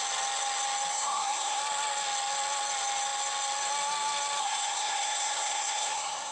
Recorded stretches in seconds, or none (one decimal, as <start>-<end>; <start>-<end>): 0.0-0.9; 1.6-4.4